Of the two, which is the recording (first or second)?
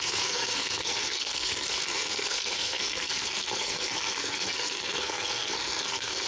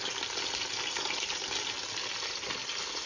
second